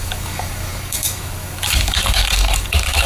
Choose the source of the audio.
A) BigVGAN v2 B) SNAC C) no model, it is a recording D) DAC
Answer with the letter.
D